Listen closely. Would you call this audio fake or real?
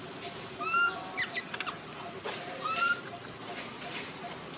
real